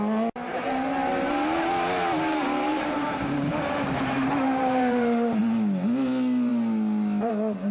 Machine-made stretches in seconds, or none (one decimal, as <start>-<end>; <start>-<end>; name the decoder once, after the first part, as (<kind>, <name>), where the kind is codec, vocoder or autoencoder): 2.7-5.4 (vocoder, BigVGAN v2)